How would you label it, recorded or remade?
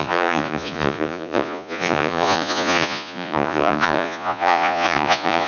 remade